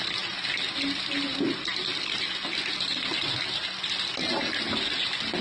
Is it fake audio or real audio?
real